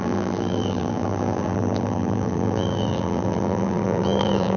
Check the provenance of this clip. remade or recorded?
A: remade